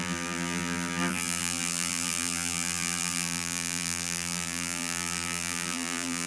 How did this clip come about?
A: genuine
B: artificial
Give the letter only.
B